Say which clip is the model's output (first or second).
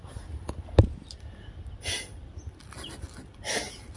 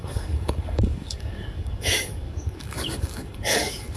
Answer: second